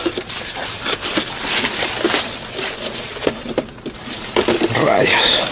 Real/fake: real